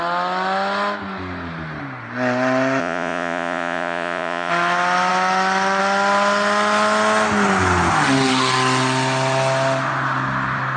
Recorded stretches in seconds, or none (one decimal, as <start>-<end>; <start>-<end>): 0.0-2.8; 4.5-10.8